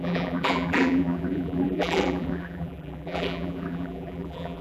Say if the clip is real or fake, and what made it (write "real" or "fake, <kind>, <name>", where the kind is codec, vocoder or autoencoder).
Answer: fake, vocoder, BigVGAN v2